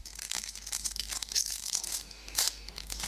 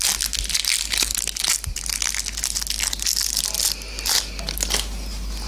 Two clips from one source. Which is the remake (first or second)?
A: first